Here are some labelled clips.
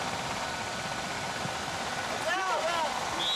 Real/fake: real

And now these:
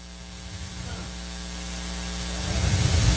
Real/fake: fake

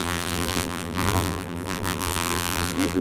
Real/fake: fake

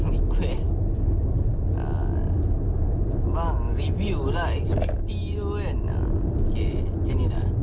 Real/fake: real